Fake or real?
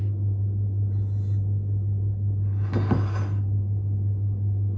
real